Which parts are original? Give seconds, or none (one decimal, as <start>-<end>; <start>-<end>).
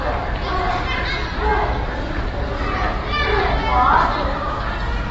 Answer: 0.0-5.1